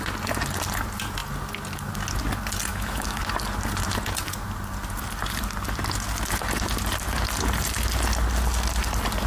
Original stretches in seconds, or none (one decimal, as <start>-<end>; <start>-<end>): 0.0-2.7; 3.2-9.3